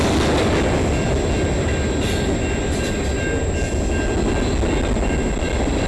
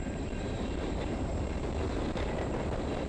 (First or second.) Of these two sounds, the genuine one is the first